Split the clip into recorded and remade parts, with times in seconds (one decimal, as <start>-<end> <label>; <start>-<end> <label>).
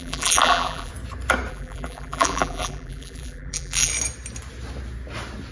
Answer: 0.0-0.9 remade; 0.9-1.5 recorded; 1.5-3.9 remade; 3.9-5.5 recorded